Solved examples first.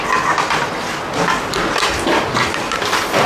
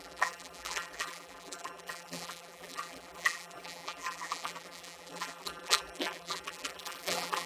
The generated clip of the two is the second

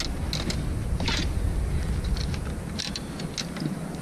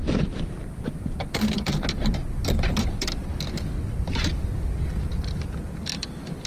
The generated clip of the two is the second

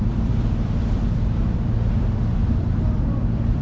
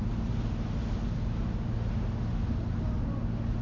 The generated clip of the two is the first